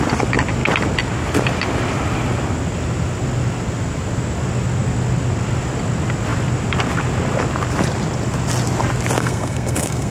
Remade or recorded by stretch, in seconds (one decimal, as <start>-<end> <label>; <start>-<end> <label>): 0.0-9.2 recorded; 9.2-10.1 remade